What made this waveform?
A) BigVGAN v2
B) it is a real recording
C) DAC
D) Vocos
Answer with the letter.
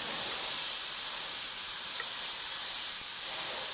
A